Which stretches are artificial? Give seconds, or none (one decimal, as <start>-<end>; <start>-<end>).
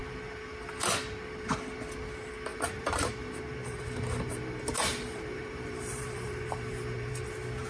2.5-3.1; 3.6-7.1